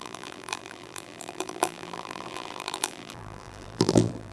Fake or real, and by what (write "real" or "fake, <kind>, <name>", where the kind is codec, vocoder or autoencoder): fake, vocoder, BigVGAN v2